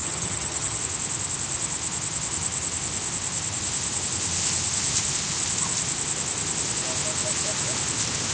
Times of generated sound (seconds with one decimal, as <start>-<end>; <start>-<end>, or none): 0.0-0.8